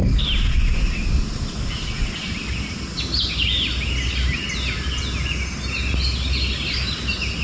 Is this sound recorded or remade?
recorded